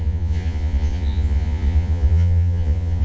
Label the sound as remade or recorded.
remade